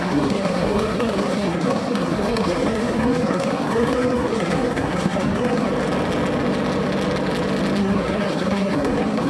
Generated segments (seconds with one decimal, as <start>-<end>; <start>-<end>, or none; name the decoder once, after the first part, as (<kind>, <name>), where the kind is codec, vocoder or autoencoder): 0.0-5.7 (codec, SNAC); 7.8-9.3